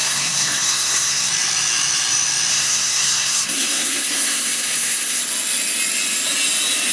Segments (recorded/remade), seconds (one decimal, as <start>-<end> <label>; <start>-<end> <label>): 0.0-1.3 remade; 1.3-2.5 recorded; 2.5-5.2 remade; 5.2-6.9 recorded